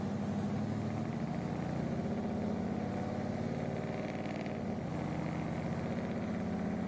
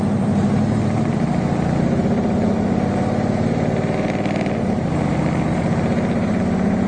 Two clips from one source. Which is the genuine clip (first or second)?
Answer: first